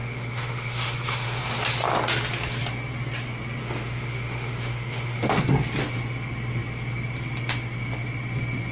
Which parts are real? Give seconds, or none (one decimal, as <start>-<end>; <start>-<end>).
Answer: 1.4-3.6; 5.4-8.7